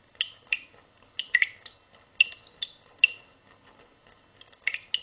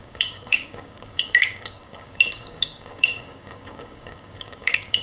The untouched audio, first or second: first